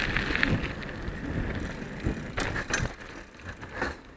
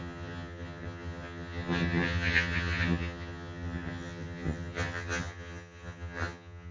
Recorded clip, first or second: first